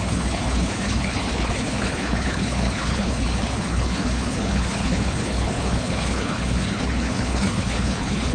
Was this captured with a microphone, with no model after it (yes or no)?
no